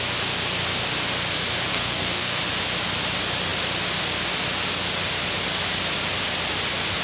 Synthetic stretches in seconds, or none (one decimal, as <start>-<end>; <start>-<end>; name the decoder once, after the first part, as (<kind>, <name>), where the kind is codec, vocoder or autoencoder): 1.7-2.4 (codec, SNAC)